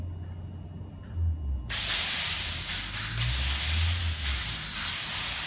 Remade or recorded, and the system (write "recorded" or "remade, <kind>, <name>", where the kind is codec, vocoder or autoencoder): recorded